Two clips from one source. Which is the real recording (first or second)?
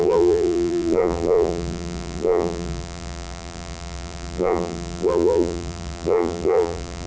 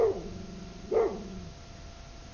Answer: second